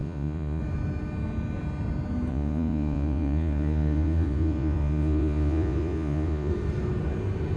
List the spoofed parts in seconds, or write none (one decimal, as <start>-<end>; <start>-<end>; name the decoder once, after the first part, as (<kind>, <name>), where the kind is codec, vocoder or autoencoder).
0.0-0.6 (vocoder, Vocos); 2.3-6.5